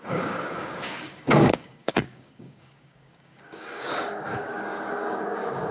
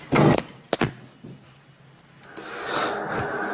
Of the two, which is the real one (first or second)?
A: second